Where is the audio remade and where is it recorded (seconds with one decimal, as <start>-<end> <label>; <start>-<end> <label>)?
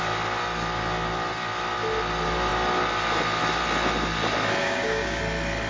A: 0.0-4.6 recorded; 4.6-5.2 remade; 5.2-5.7 recorded